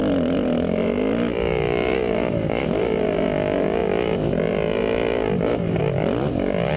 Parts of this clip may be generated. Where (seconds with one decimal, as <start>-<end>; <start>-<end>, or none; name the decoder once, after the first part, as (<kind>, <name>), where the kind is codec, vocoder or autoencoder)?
none